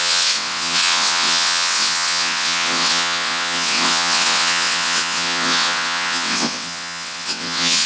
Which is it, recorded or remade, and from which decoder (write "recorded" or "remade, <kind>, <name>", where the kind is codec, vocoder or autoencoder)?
remade, vocoder, WaveNeXt